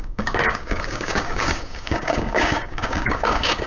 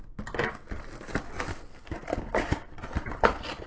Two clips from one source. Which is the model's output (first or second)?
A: first